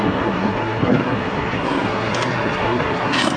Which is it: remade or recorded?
remade